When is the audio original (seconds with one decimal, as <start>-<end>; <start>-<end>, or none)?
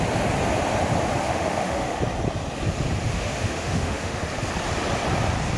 0.0-1.2; 2.0-3.1; 4.2-5.6